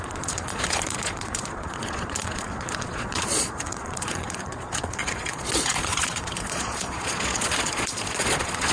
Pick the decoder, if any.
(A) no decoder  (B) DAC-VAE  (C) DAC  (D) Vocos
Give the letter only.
D